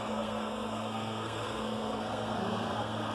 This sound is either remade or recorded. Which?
remade